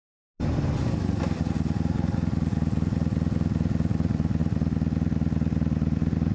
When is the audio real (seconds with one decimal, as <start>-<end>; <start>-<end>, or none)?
0.0-6.3